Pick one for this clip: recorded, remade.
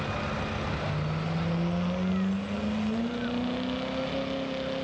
recorded